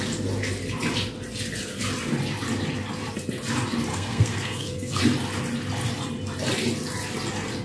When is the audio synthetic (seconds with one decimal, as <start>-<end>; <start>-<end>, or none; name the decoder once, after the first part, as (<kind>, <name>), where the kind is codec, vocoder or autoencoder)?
3.9-5.0 (codec, SNAC)